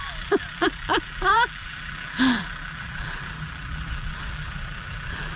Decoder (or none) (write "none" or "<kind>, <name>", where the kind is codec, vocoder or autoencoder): vocoder, BigVGAN v2